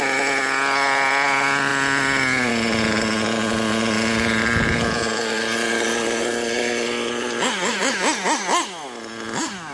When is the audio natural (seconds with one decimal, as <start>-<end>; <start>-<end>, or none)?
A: 0.0-9.7